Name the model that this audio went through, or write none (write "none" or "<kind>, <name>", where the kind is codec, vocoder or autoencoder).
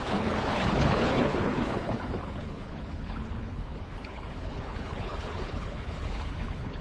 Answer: codec, HILCodec